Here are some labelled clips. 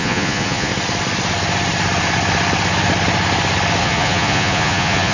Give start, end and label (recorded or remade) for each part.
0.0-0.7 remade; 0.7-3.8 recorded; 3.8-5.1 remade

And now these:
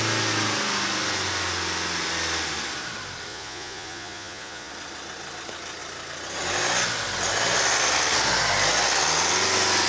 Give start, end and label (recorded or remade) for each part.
0.0-3.3 recorded; 3.3-4.7 remade; 4.7-9.9 recorded

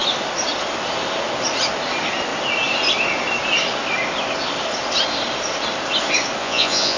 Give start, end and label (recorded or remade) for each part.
0.0-6.4 recorded; 6.4-7.0 remade